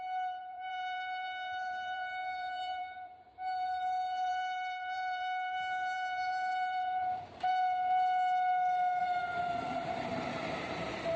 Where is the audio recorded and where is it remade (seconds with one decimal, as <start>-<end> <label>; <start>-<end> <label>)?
0.0-7.5 remade; 7.5-9.0 recorded; 9.0-11.2 remade